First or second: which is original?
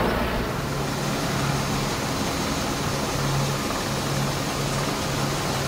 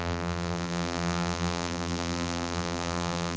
first